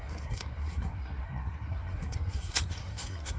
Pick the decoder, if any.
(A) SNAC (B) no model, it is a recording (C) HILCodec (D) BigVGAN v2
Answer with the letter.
A